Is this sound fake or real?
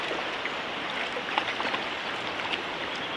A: real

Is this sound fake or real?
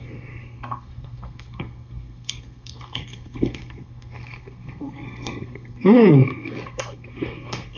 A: fake